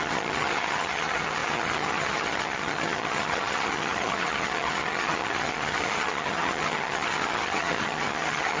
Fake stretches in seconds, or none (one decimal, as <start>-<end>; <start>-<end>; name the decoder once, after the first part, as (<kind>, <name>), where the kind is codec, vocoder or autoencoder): 0.0-8.6 (vocoder, HiFi-GAN)